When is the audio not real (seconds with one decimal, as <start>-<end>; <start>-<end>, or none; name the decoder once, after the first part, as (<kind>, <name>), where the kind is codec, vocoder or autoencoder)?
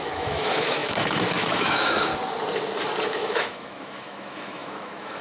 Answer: 0.0-2.1 (autoencoder, DAC-VAE); 3.1-5.2